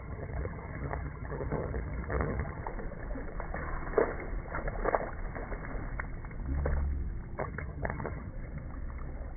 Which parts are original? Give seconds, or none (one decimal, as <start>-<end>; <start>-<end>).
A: 2.6-7.4; 8.3-9.4